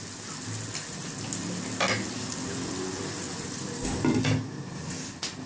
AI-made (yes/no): no